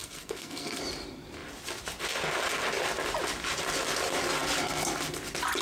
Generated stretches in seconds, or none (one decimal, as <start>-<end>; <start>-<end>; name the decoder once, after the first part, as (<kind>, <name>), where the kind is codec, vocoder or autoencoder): 0.0-0.8 (codec, SNAC)